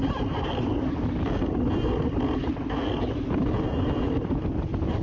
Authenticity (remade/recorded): recorded